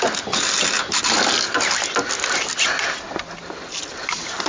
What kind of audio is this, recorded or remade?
recorded